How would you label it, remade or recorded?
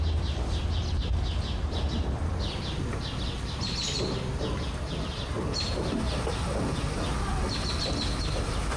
recorded